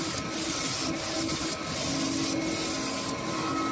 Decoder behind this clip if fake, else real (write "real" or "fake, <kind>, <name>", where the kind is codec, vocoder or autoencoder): real